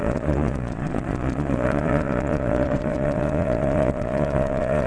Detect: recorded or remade remade